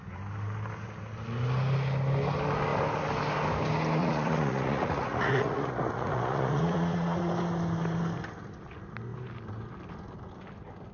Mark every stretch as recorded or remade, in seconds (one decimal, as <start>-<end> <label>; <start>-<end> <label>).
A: 0.0-4.0 recorded; 4.0-7.3 remade; 7.3-10.9 recorded